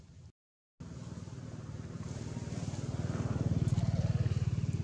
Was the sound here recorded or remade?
recorded